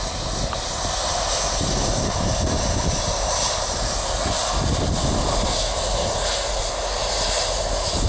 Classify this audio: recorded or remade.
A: recorded